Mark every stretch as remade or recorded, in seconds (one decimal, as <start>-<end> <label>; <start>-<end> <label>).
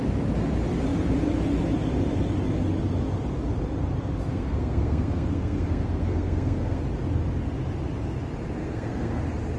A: 0.0-4.3 recorded; 4.3-6.8 remade; 6.8-8.6 recorded; 8.6-9.2 remade; 9.2-9.6 recorded